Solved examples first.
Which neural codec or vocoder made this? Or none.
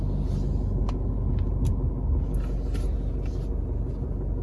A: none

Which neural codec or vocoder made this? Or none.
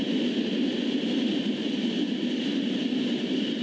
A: none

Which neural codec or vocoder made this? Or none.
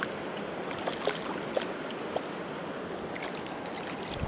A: none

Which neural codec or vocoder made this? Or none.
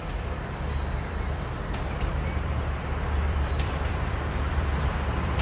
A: vocoder, BigVGAN v2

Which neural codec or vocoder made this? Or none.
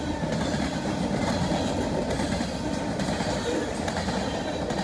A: none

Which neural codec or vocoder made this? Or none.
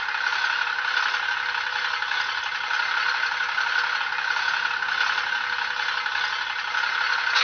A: none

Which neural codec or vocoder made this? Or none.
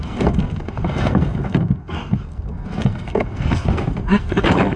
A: codec, SNAC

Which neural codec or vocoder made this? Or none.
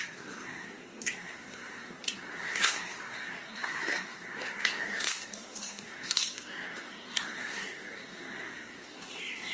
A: codec, SNAC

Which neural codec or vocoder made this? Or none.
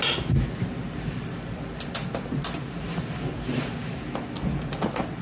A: none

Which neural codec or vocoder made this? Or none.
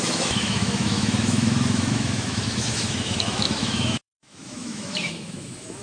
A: autoencoder, DAC-VAE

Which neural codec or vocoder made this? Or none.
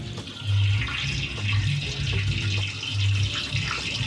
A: none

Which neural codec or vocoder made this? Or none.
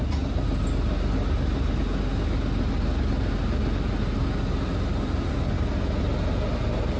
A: none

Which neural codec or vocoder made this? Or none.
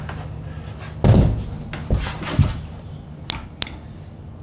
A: none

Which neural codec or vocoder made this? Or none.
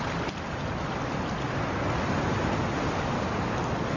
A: none